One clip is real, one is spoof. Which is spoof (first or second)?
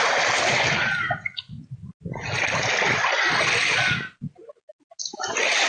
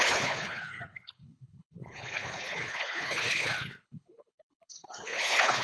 second